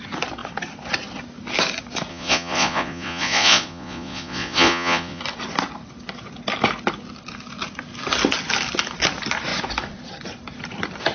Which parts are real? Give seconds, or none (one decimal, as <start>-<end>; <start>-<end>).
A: 0.0-2.1; 5.2-11.1